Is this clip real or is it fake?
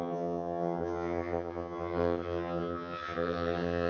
fake